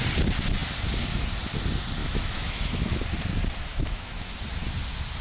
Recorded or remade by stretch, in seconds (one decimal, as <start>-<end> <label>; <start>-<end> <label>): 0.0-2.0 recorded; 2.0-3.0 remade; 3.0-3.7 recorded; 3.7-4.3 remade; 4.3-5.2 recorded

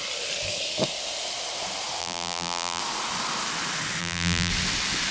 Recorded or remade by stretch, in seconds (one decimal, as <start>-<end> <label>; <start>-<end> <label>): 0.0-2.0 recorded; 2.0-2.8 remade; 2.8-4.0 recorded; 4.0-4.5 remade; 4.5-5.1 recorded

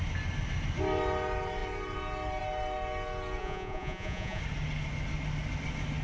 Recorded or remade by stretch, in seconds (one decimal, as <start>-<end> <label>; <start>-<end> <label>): 0.0-3.4 recorded; 3.4-4.4 remade; 4.4-6.0 recorded

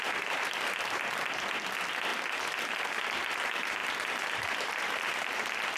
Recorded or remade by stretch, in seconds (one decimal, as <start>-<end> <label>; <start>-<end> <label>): 0.0-5.8 recorded

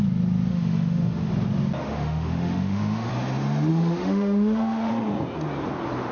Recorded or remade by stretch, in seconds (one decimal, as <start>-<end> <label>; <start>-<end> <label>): 0.0-0.5 recorded; 0.5-1.3 remade; 1.3-1.8 recorded; 1.8-3.1 remade; 3.1-3.7 recorded; 3.7-4.9 remade; 4.9-6.1 recorded

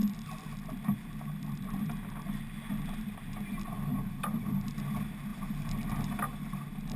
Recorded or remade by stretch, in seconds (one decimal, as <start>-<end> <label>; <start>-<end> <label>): 0.0-7.0 recorded

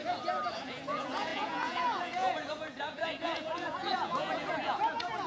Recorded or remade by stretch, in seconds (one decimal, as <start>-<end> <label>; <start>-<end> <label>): 0.0-0.7 recorded; 0.7-5.3 remade

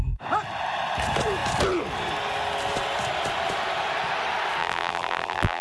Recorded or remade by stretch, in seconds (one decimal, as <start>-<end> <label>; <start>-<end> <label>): 0.0-4.6 recorded; 4.6-5.6 remade